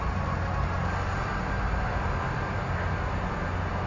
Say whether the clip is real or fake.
real